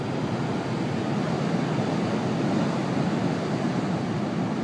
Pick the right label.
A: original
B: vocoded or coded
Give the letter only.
A